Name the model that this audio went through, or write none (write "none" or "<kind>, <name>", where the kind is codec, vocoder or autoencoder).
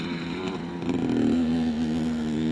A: none